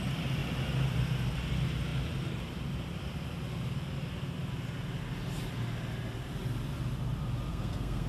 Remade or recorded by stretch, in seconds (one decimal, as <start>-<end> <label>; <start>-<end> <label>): 0.0-7.5 recorded; 7.5-8.1 remade